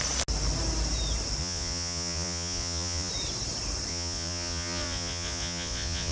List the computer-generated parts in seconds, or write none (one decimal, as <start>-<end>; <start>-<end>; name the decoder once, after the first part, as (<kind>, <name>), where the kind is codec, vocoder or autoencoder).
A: 1.4-3.1 (vocoder, Vocos); 3.9-6.1